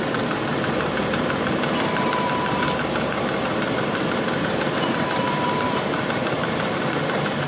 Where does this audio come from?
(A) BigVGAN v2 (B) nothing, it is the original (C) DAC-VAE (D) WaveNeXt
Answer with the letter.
A